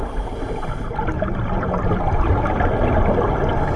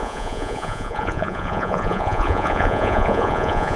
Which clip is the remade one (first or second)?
second